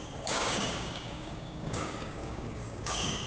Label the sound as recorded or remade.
remade